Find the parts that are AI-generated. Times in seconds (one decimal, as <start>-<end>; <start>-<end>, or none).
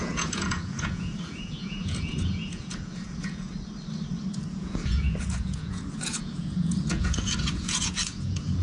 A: 0.0-3.5; 4.5-8.6